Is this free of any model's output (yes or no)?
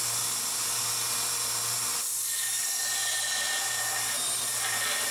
yes